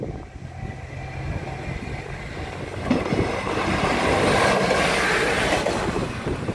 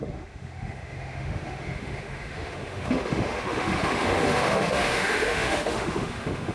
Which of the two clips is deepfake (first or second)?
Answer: second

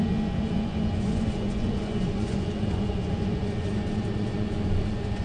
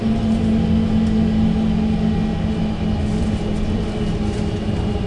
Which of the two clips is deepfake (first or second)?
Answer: first